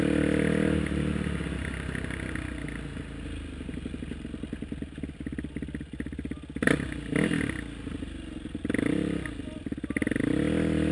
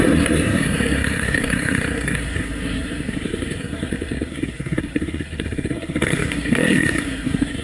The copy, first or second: second